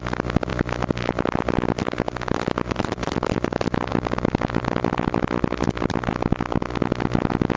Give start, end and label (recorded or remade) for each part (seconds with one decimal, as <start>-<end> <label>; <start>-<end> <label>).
0.0-7.6 recorded